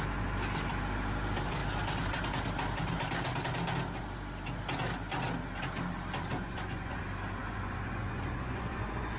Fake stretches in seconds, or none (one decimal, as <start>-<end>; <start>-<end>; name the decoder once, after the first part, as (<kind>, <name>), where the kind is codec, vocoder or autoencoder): 6.4-7.0 (vocoder, Vocos); 7.4-9.2